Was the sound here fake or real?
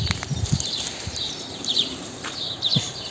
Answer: fake